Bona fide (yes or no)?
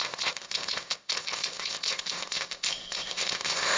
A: no